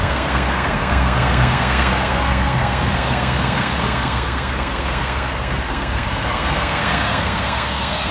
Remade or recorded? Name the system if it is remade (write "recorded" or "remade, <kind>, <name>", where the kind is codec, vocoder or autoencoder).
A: remade, codec, SNAC